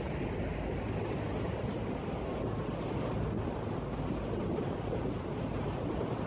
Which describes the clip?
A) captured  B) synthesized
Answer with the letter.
A